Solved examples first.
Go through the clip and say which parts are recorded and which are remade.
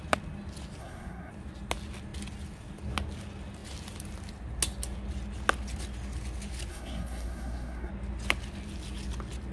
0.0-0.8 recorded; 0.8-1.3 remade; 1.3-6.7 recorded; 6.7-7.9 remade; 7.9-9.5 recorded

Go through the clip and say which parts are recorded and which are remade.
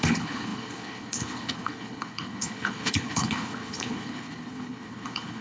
0.0-5.4 remade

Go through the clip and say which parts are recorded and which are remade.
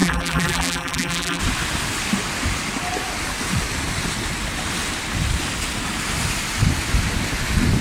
0.0-1.4 remade; 1.4-7.8 recorded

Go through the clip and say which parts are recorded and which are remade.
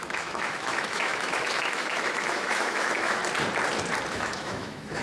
0.0-3.2 remade; 3.2-4.1 recorded; 4.1-5.0 remade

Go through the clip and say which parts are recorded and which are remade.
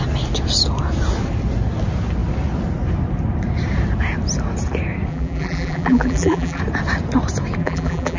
0.0-5.1 recorded; 5.1-6.6 remade; 6.6-7.6 recorded; 7.6-8.2 remade